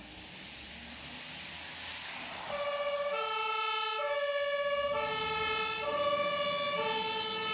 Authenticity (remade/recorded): recorded